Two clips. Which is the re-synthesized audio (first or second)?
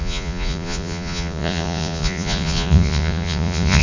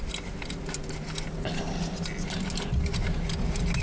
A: first